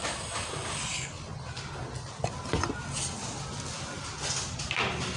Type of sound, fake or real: real